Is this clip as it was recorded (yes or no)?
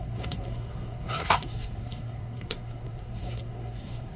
no